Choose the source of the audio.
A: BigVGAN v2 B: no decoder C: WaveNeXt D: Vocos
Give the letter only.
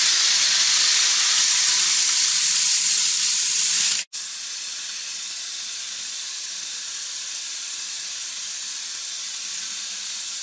B